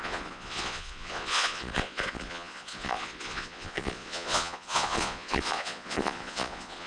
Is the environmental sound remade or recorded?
remade